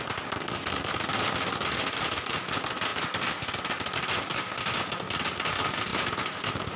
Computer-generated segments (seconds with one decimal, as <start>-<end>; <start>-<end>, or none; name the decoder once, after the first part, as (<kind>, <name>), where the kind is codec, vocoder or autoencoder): 5.9-6.8 (vocoder, BigVGAN v2)